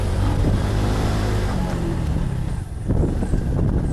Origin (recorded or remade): remade